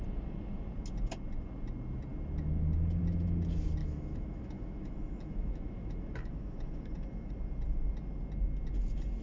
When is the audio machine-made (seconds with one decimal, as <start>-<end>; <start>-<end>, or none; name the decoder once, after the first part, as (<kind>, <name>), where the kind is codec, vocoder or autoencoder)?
3.8-7.3 (autoencoder, DAC-VAE)